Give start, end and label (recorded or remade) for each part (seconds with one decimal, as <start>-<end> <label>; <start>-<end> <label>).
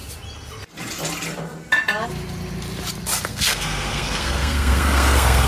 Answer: 0.0-3.3 recorded; 3.3-5.5 remade